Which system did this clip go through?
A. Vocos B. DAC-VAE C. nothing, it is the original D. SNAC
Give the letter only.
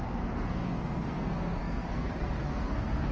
D